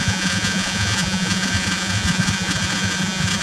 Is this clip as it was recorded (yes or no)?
no